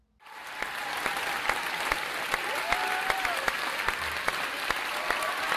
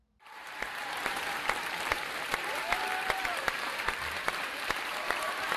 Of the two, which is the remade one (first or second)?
second